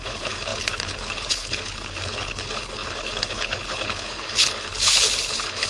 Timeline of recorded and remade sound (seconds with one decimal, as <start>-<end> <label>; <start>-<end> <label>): 0.0-5.7 remade